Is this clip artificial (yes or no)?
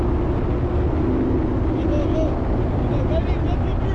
no